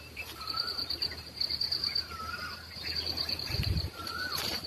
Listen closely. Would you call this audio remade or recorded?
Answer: remade